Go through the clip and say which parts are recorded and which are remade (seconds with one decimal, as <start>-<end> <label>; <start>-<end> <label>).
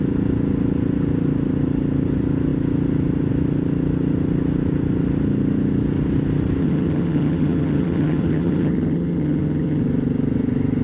0.0-6.6 recorded; 6.6-9.8 remade; 9.8-10.8 recorded